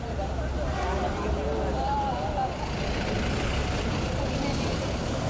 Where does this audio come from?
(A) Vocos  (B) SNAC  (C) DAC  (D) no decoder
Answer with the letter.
D